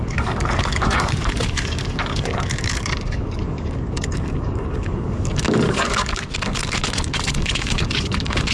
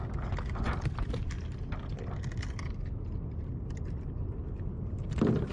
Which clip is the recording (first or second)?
second